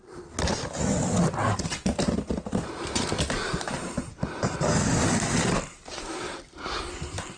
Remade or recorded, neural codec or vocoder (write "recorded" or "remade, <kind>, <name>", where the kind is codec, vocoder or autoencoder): recorded